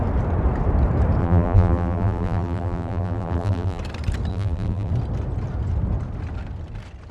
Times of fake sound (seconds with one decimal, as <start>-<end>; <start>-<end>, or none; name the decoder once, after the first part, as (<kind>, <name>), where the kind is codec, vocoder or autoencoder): 1.2-3.8 (vocoder, BigVGAN v2); 4.3-4.9